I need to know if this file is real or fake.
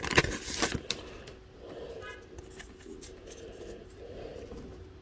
real